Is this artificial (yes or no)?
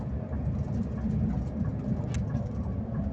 no